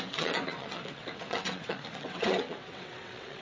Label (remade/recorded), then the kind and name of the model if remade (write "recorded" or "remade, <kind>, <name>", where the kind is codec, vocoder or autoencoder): remade, vocoder, WaveNeXt